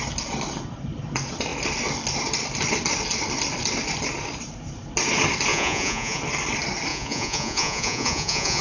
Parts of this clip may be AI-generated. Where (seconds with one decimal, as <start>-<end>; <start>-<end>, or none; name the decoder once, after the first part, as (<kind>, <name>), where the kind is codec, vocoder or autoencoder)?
5.5-6.2 (vocoder, Vocos); 6.9-8.6